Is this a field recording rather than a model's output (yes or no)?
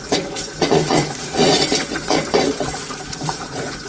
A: no